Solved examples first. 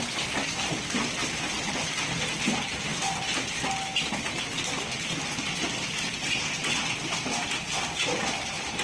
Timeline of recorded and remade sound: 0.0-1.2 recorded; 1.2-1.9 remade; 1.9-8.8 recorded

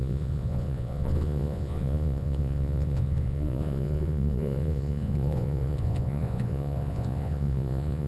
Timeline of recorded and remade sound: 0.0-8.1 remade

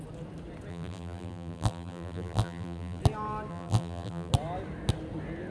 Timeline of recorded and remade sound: 0.0-0.7 recorded; 0.7-3.0 remade; 3.0-3.5 recorded; 3.5-4.3 remade; 4.3-5.5 recorded